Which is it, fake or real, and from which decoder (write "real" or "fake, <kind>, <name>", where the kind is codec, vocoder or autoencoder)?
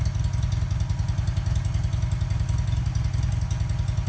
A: real